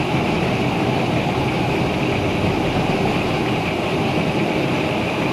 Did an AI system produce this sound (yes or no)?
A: yes